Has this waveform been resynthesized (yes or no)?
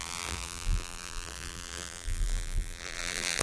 yes